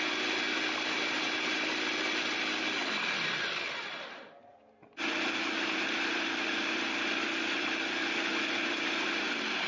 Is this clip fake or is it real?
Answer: real